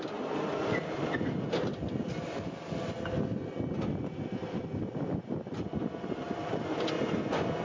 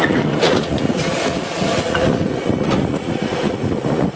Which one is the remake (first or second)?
second